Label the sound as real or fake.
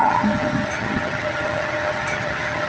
fake